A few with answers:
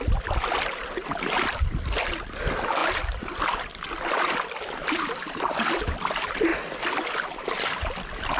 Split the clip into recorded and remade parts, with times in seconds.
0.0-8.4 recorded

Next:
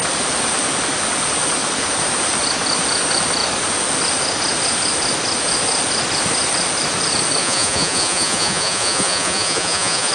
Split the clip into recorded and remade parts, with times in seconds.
0.0-7.4 recorded; 7.4-10.1 remade

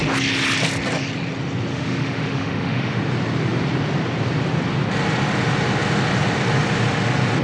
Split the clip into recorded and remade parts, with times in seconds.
0.0-1.7 recorded; 1.7-3.0 remade; 3.0-7.4 recorded